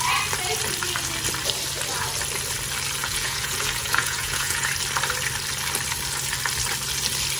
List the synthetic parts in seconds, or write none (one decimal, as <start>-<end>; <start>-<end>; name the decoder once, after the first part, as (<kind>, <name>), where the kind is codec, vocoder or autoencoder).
3.0-4.7 (vocoder, Vocos)